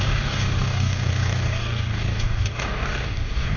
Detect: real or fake fake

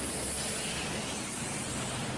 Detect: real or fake real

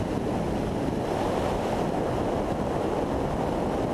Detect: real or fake real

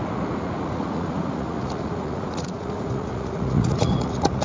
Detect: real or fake fake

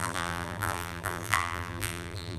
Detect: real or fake fake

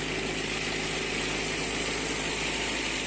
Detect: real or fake real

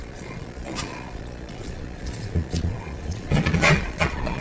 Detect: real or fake fake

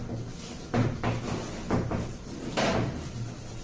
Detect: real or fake real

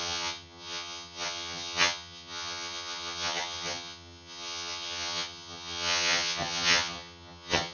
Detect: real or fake fake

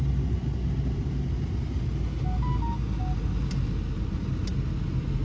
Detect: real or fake real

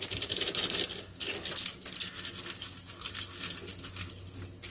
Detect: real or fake real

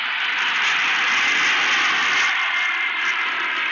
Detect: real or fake real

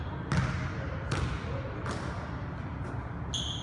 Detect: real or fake real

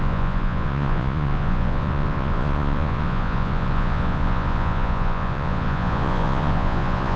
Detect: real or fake fake